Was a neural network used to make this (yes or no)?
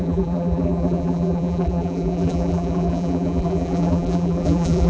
yes